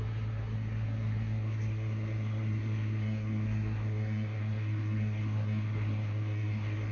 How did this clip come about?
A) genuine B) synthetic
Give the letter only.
B